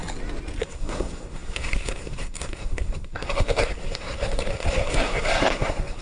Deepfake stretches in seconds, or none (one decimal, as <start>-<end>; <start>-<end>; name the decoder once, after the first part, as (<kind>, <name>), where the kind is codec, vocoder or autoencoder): 0.6-6.0 (codec, SNAC)